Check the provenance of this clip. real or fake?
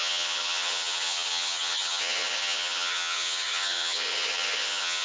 fake